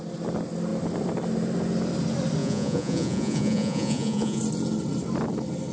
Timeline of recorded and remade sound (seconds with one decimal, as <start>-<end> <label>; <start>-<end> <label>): 0.0-2.4 recorded; 2.4-4.4 remade; 4.4-5.7 recorded